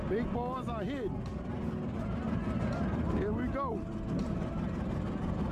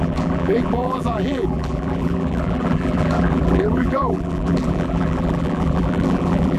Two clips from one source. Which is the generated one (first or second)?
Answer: second